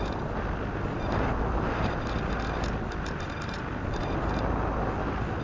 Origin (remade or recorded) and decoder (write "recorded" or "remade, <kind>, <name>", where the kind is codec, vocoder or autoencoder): recorded